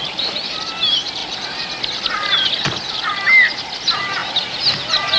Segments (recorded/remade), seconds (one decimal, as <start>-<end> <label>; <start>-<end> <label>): 0.0-1.2 recorded; 1.2-1.7 remade; 1.7-5.2 recorded